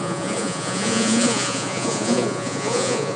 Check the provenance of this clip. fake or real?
fake